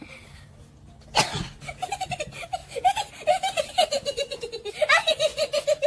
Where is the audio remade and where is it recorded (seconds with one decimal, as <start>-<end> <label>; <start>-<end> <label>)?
0.0-5.9 recorded